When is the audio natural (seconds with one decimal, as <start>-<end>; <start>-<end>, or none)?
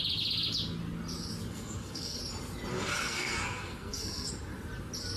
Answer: 0.0-1.5; 2.2-2.7; 4.3-5.2